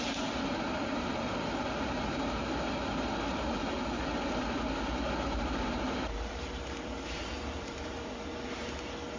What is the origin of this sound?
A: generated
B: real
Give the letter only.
A